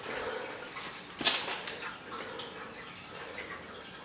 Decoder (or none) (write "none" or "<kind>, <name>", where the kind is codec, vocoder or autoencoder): none